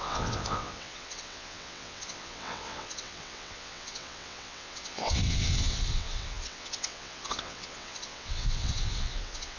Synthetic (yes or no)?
yes